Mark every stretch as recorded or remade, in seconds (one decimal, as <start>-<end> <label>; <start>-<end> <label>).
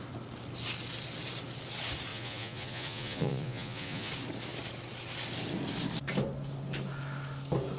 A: 0.0-2.1 recorded; 2.1-4.1 remade; 4.1-7.8 recorded